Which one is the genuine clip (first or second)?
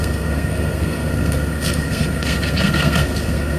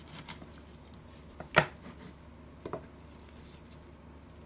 second